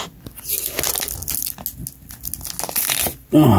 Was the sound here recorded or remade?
recorded